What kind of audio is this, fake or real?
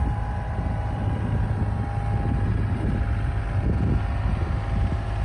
real